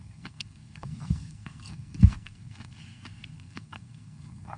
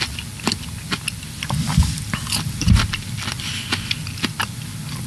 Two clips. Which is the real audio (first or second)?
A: second